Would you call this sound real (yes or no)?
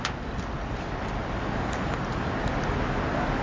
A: yes